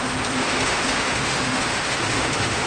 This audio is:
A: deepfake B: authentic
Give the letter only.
A